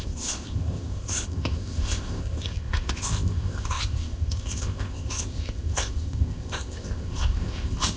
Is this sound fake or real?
fake